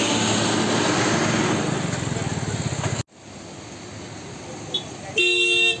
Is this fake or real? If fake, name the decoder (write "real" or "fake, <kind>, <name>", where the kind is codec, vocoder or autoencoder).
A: real